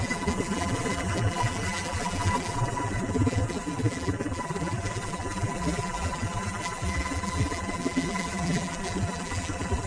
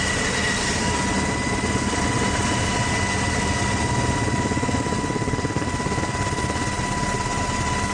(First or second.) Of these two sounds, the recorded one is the second